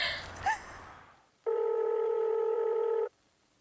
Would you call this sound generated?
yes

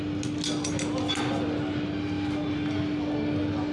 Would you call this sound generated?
no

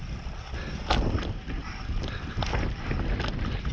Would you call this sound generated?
yes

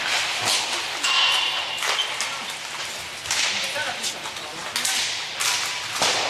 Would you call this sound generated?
no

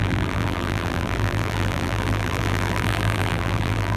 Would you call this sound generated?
yes